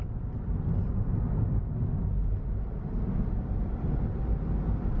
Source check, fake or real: real